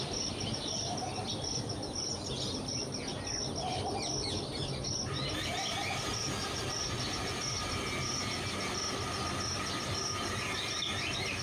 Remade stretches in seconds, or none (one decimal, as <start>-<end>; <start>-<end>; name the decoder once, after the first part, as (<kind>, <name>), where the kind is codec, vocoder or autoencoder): none